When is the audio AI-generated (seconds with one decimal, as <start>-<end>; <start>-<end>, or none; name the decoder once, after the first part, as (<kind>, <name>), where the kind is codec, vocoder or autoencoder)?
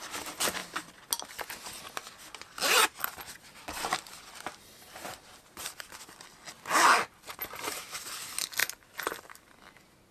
8.6-9.2 (vocoder, BigVGAN v2)